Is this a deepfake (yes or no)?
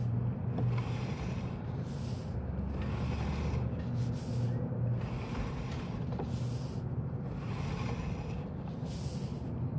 no